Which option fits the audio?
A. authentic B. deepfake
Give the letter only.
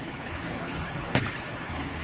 B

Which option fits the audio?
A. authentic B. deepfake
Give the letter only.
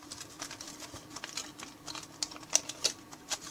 B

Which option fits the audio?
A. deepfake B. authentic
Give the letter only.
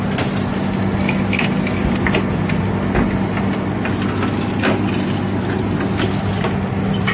B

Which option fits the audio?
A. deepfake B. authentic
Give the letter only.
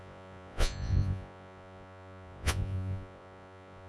A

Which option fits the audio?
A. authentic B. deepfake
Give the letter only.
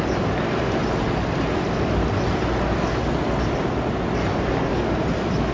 A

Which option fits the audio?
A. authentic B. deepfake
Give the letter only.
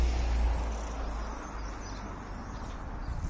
A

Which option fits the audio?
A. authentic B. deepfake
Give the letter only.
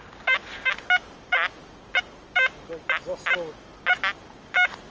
A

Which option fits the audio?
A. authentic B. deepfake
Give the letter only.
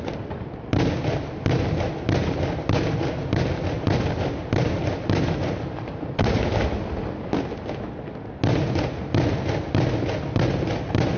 A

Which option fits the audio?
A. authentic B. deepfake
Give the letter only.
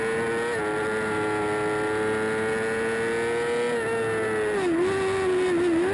A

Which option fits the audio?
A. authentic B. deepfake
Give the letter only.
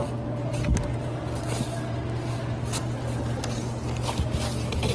A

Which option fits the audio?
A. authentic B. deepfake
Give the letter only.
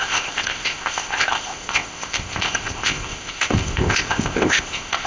B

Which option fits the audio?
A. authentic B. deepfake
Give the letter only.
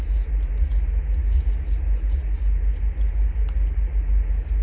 A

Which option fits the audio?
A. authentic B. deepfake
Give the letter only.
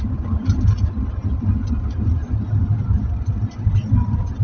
A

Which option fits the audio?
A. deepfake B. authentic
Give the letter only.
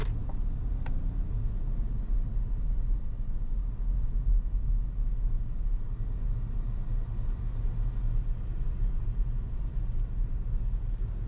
B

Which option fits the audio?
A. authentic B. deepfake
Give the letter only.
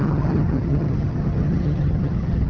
B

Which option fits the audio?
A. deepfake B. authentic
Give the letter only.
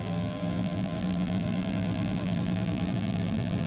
A